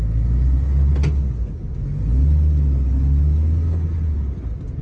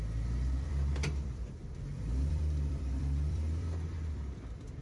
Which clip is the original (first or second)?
first